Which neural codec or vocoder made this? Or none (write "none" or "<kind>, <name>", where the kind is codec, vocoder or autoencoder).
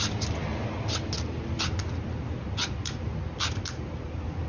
none